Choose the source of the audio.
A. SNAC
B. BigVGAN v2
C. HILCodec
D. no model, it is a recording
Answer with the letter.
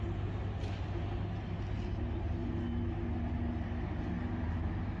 D